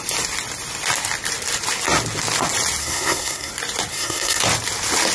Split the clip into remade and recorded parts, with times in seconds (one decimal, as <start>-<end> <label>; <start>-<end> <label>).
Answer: 0.0-2.8 recorded; 2.8-3.5 remade; 3.5-3.9 recorded; 3.9-4.4 remade; 4.4-5.1 recorded